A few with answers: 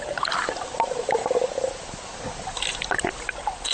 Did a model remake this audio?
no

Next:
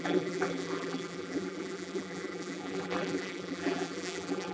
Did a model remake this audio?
yes